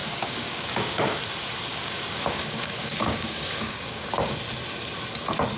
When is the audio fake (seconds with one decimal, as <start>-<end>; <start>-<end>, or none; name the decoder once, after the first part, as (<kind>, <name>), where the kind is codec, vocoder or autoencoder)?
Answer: 0.0-1.2 (codec, DAC); 1.7-4.4

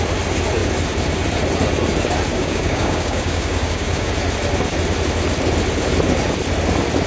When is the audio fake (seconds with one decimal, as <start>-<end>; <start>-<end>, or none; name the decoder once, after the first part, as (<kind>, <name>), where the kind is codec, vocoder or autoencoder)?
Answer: 2.3-4.1 (codec, DAC)

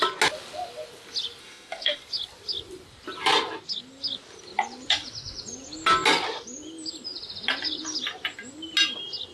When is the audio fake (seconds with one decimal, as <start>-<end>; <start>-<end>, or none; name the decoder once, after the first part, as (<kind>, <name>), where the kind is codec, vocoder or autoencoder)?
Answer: 1.4-2.0 (autoencoder, DAC-VAE)